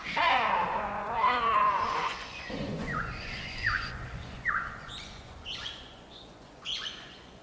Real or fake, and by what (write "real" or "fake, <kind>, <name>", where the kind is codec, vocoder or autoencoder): fake, vocoder, Vocos